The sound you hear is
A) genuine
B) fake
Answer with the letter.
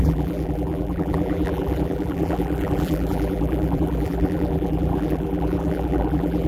B